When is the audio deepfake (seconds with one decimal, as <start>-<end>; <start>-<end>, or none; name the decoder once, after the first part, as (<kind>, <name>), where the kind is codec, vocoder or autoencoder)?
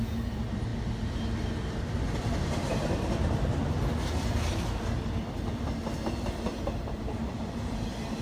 6.5-7.4 (vocoder, BigVGAN v2)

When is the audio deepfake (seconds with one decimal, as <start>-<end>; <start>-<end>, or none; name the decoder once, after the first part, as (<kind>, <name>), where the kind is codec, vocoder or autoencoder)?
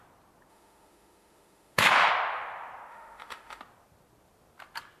0.5-2.1 (autoencoder, DAC-VAE); 2.9-3.6